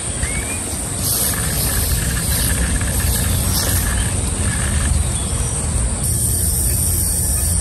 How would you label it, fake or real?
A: real